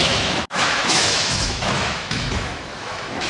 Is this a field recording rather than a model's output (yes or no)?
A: no